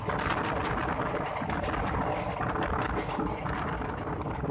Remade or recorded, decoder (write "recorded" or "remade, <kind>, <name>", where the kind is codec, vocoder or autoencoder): recorded